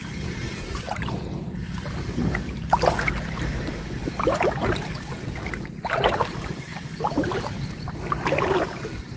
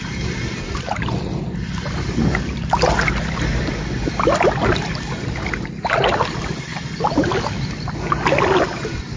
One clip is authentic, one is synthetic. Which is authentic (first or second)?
second